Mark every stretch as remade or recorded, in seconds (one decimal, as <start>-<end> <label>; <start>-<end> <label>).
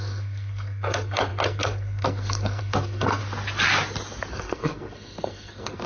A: 0.0-3.2 remade; 3.2-4.3 recorded; 4.3-5.9 remade